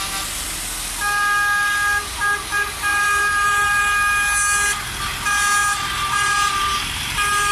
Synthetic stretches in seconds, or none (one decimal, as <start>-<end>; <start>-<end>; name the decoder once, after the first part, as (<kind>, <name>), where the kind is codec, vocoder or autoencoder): 2.9-3.8 (vocoder, BigVGAN v2); 5.6-7.5